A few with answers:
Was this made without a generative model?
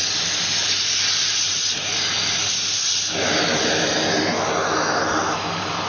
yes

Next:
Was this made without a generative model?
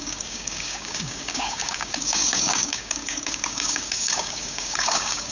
no